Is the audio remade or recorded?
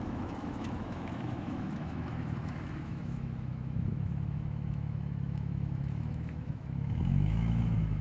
remade